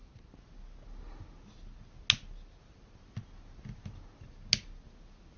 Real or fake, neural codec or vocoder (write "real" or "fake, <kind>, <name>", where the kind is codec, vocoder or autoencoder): real